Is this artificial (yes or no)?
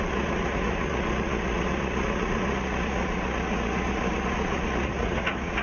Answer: yes